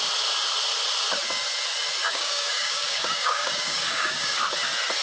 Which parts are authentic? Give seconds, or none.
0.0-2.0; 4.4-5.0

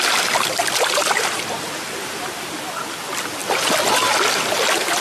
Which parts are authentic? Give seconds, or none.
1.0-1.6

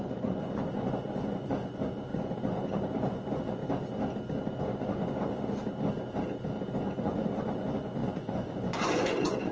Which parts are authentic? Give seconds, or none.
3.6-4.6; 5.6-7.0

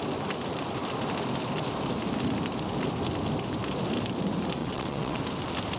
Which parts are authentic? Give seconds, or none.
0.0-4.6; 5.2-5.8

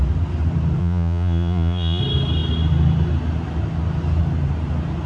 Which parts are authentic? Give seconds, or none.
0.0-0.8; 2.0-5.1

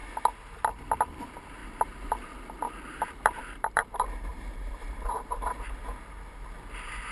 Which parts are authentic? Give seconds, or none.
0.0-1.6; 5.8-7.1

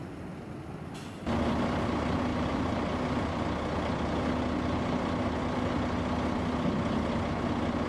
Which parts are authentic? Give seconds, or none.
0.0-2.3; 2.8-7.9

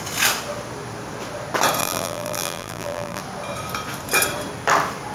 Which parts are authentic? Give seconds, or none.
0.0-1.8; 3.2-5.1